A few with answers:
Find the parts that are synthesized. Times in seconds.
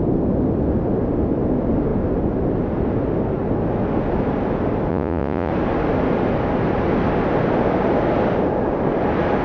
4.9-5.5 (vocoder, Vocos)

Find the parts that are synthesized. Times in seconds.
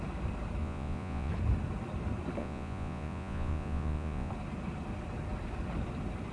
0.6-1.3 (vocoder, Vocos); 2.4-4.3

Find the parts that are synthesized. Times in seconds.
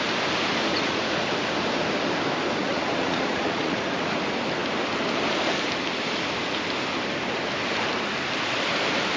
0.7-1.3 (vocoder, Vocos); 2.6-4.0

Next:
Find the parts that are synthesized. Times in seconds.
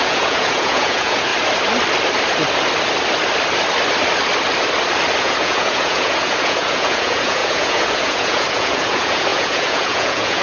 0.0-1.3 (vocoder, Vocos); 5.2-10.4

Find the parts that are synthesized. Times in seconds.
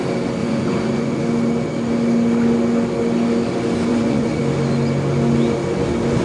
0.4-1.2 (vocoder, Vocos); 3.9-4.4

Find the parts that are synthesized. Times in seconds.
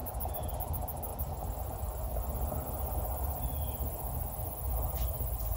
0.0-0.5 (vocoder, Vocos)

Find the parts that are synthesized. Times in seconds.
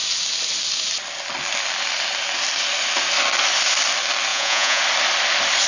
4.3-4.8 (vocoder, Vocos)